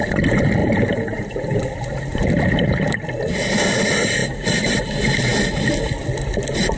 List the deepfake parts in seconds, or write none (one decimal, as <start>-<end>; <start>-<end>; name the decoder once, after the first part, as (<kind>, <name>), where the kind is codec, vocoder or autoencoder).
0.6-3.1 (vocoder, BigVGAN v2); 4.2-4.8